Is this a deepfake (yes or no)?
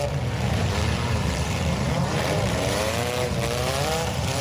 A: yes